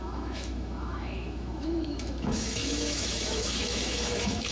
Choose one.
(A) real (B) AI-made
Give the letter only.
B